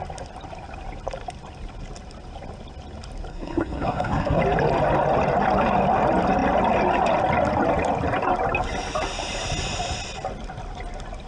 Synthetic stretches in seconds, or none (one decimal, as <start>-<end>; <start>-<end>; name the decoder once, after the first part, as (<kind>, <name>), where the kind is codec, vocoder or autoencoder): 3.3-4.4 (codec, SNAC)